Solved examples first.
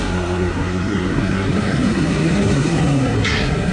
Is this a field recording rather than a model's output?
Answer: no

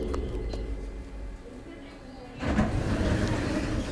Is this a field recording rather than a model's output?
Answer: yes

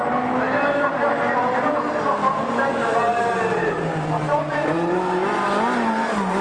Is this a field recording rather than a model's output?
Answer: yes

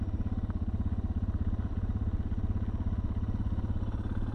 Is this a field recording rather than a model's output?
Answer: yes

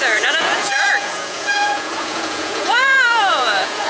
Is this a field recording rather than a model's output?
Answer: no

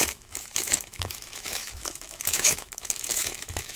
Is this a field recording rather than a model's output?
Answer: no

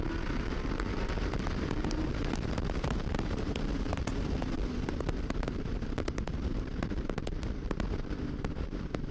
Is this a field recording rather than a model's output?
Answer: no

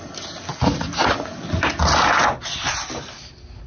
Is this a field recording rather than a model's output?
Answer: yes